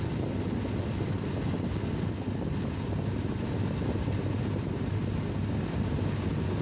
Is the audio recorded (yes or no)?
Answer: yes